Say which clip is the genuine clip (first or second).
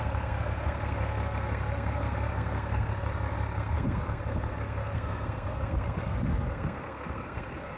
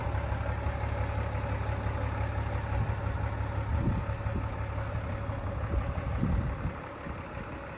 second